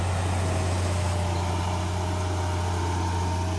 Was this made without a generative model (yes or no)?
yes